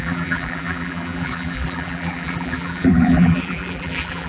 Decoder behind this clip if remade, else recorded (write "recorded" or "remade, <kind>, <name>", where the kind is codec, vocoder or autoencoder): remade, vocoder, BigVGAN v2